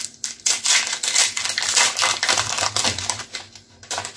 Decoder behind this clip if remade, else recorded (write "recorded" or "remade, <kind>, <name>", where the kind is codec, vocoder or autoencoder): recorded